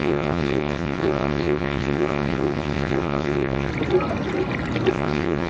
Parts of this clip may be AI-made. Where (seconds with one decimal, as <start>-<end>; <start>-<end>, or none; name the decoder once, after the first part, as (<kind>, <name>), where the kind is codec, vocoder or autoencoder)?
0.0-3.7 (vocoder, WaveNeXt); 4.9-5.5